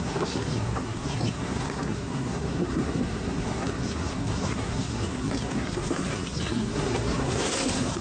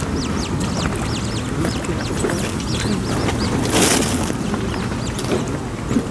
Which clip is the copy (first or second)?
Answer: first